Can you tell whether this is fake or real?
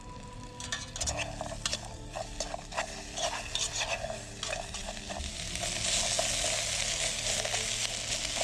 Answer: real